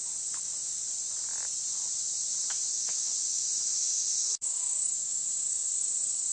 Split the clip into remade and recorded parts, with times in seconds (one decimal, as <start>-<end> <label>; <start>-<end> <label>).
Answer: 0.0-2.7 recorded; 2.7-6.3 remade